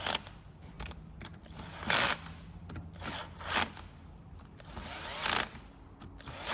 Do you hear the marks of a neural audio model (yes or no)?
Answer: no